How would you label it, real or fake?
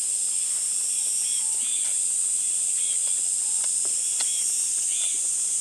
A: real